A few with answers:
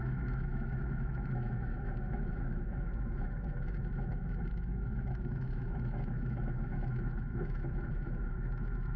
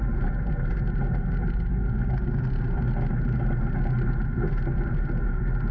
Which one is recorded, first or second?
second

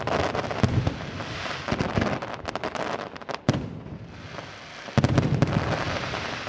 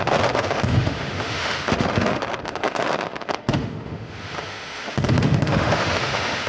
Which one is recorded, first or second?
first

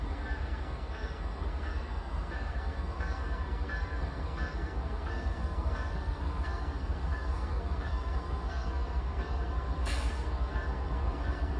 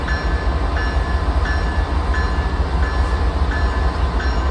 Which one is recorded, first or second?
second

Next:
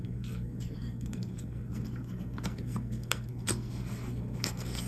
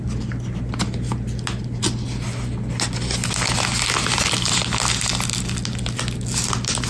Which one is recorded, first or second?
second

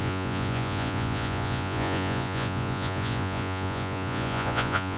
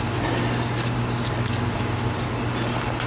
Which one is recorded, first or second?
second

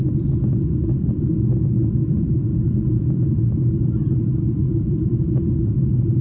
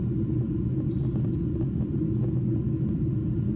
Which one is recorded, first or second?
second